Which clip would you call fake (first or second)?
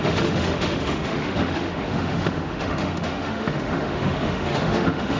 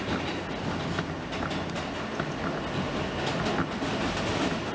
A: first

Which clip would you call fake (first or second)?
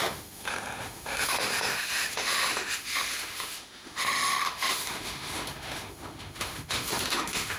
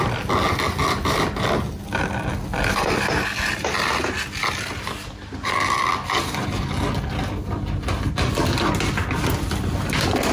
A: first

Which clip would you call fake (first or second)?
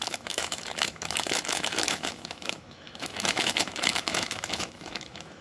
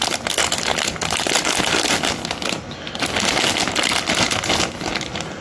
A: first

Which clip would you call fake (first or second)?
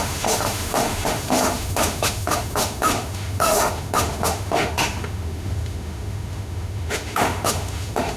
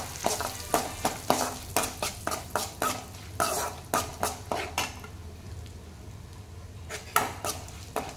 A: first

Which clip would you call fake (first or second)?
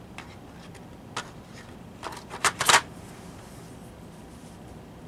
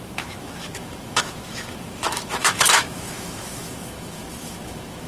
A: second